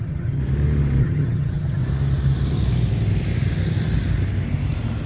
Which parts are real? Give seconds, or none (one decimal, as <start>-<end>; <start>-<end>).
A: 0.4-1.0; 1.8-5.1